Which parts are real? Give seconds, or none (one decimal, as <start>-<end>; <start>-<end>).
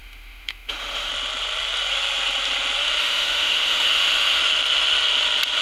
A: 1.1-3.0; 4.4-5.6